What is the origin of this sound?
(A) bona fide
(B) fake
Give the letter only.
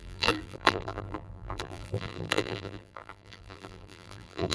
B